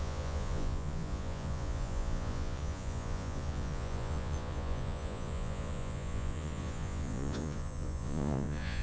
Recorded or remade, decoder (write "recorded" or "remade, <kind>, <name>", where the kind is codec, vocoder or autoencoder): remade, vocoder, Vocos